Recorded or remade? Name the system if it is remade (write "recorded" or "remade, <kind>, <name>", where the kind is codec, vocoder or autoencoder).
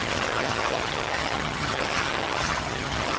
remade, vocoder, HiFi-GAN